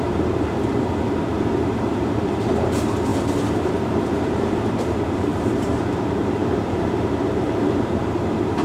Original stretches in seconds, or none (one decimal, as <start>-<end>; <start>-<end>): none